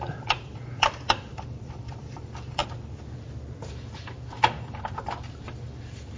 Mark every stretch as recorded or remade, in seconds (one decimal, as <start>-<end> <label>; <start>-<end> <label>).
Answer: 0.0-2.6 remade; 2.6-3.7 recorded; 3.7-6.2 remade